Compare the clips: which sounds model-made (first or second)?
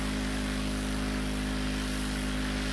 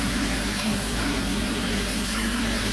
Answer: second